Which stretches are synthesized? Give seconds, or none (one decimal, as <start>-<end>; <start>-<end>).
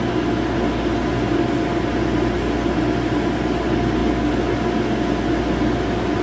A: none